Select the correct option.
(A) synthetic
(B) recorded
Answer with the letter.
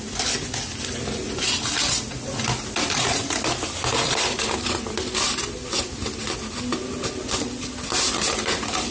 B